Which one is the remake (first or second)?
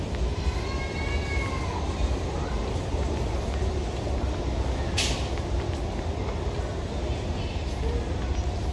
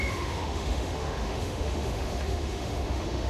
second